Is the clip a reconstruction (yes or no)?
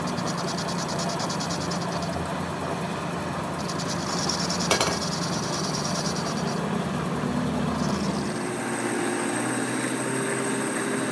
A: no